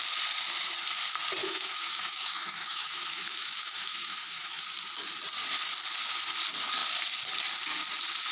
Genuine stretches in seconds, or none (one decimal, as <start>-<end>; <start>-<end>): 0.0-1.4; 4.6-8.3